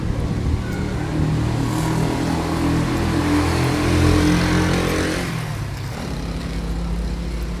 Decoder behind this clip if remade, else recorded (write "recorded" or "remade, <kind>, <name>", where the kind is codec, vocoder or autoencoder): recorded